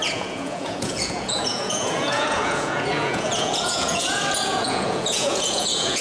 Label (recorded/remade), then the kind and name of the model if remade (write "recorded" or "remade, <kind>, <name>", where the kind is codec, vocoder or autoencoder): remade, vocoder, Vocos